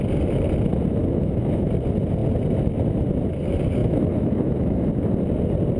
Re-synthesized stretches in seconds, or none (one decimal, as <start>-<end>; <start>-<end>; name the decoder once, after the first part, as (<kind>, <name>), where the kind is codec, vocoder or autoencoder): 1.0-1.7 (autoencoder, DAC-VAE); 3.8-4.9